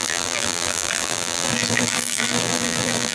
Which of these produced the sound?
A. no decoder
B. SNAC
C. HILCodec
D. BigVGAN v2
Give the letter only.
D